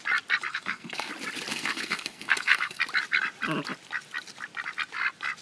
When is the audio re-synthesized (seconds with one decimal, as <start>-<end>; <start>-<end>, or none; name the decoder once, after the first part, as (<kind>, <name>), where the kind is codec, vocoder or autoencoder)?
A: 0.5-1.1 (codec, SNAC); 1.5-2.8